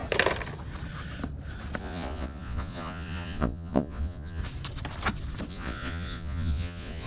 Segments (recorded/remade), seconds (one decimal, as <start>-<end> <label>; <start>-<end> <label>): 0.0-1.8 recorded; 1.8-4.4 remade; 4.4-5.5 recorded; 5.5-7.1 remade